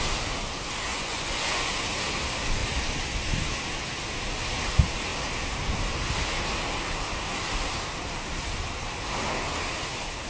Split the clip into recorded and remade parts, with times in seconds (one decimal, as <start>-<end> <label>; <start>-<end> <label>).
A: 0.0-0.9 recorded; 0.9-1.7 remade; 1.7-10.3 recorded